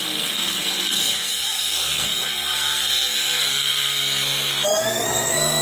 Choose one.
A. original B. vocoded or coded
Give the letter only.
B